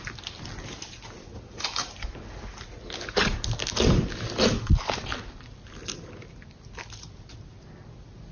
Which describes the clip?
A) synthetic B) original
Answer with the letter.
B